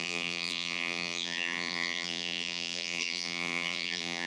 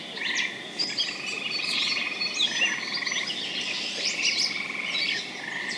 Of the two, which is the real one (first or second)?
second